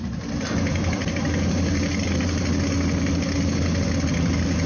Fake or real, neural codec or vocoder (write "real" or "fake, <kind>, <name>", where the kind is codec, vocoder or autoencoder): real